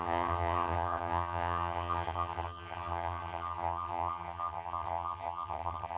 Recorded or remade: remade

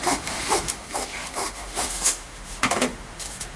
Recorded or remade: remade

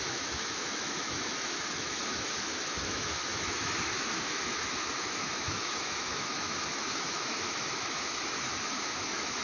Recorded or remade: remade